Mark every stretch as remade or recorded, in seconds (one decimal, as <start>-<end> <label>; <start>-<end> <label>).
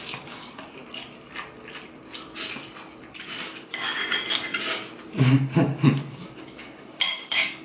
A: 0.0-0.8 remade; 0.8-3.1 recorded; 3.1-4.0 remade; 4.0-5.2 recorded; 5.2-7.6 remade